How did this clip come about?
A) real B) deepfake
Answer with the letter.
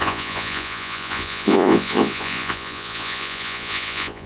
B